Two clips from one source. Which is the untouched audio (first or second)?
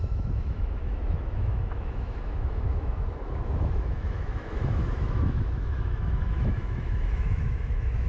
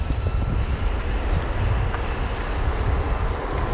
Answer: second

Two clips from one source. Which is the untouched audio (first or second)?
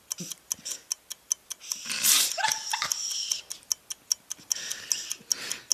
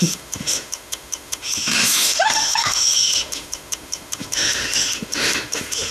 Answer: first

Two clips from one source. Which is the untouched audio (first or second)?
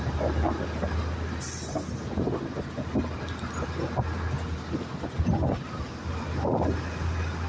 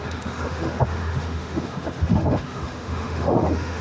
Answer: first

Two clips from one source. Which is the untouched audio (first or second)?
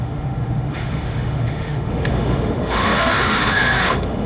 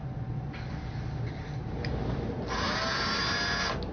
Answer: second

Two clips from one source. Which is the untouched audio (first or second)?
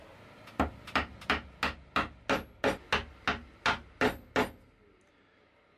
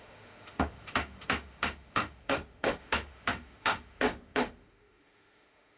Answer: first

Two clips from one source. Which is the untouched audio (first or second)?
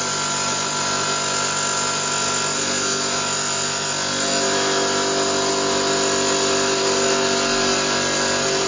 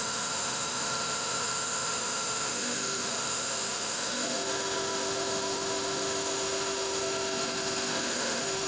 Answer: first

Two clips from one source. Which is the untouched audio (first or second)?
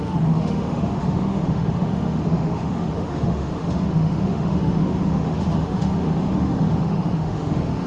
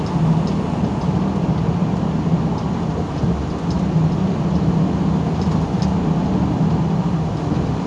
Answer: second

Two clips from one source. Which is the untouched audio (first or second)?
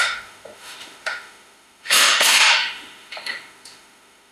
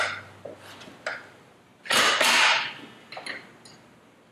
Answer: second